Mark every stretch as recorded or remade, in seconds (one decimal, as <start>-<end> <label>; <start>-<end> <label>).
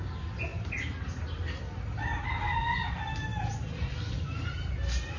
0.0-5.2 recorded